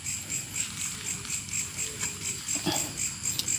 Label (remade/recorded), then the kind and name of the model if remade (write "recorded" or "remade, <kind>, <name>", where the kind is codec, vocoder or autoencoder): recorded